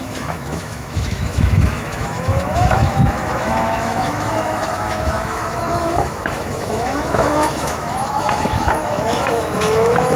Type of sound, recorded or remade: remade